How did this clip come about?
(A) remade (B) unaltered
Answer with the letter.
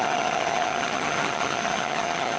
A